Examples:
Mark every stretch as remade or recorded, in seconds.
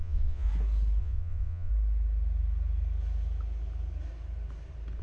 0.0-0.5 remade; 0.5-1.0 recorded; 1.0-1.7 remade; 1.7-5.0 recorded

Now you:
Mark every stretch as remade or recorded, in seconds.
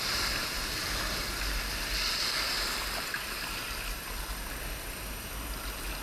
0.0-6.0 recorded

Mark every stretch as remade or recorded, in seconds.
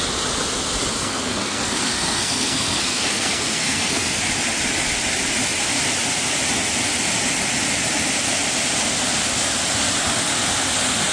0.0-1.0 recorded; 1.0-4.2 remade; 4.2-11.1 recorded